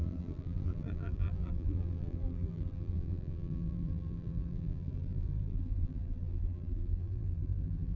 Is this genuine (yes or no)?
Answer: no